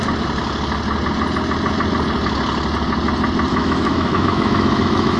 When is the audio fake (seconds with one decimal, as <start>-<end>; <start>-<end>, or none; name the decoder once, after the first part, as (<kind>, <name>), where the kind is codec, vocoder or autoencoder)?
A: 3.5-5.2 (autoencoder, DAC-VAE)